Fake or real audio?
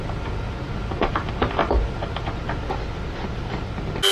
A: real